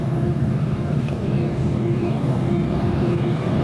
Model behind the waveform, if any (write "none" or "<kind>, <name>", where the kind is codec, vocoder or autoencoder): codec, DAC